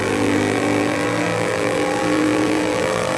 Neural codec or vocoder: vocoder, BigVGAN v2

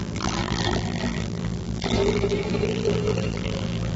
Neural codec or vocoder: vocoder, BigVGAN v2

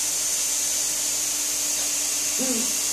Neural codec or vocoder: none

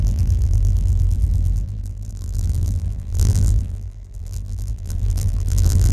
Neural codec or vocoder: vocoder, BigVGAN v2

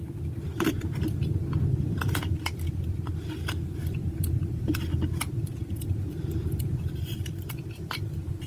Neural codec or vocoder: vocoder, BigVGAN v2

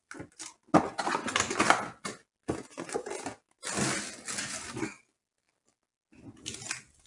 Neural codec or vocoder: none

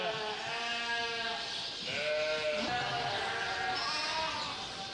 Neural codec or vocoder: none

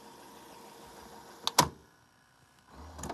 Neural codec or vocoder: none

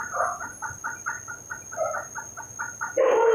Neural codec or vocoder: none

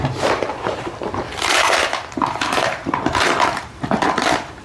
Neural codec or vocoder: vocoder, BigVGAN v2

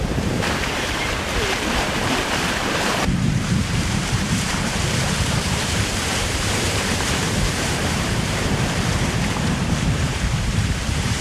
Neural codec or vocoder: vocoder, BigVGAN v2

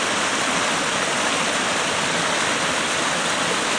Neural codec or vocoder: none